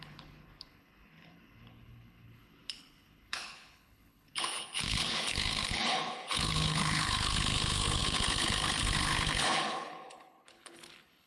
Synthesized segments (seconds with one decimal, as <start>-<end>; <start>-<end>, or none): 0.0-11.3